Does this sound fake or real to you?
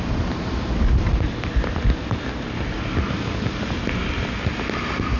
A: real